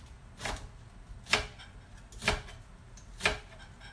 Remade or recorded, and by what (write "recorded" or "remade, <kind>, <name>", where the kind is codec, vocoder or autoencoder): recorded